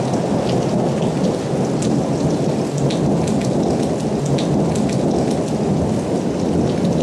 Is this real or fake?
real